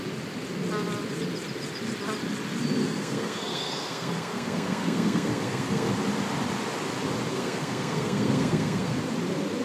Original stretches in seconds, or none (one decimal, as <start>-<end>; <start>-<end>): 0.0-2.8; 5.9-7.3; 9.0-9.6